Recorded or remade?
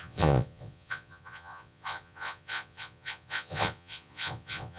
remade